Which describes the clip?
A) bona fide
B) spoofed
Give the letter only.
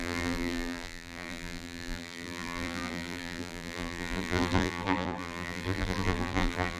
B